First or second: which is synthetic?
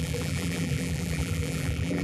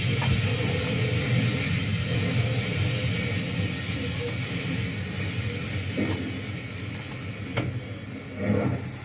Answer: first